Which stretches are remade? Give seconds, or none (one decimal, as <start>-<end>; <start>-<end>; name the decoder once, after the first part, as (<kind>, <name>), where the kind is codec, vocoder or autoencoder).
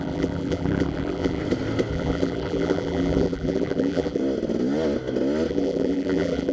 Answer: 0.0-1.4 (vocoder, BigVGAN v2); 1.9-4.2; 5.5-6.5